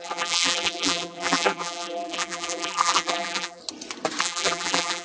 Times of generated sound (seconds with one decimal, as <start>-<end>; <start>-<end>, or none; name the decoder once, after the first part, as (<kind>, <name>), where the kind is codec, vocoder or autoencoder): 0.0-3.6 (vocoder, BigVGAN v2); 4.2-5.0